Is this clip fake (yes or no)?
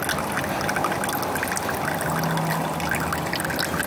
no